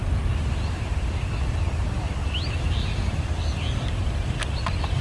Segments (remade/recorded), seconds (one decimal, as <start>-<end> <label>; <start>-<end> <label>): 0.0-5.0 recorded